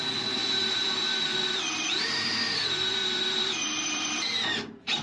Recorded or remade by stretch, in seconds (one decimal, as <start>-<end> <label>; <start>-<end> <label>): 0.0-5.0 remade